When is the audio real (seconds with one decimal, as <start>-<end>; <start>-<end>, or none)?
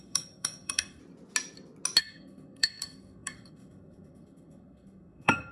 1.0-2.0